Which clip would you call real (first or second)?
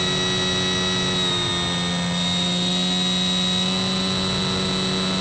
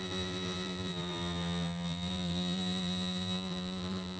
first